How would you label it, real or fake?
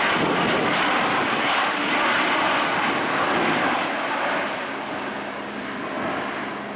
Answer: real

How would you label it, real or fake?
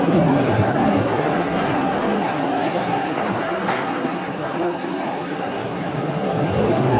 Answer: fake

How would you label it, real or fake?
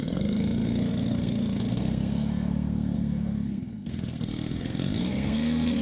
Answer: fake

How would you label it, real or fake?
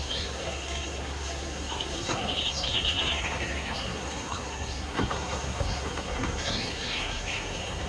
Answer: fake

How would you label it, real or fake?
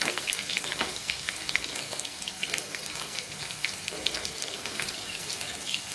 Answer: fake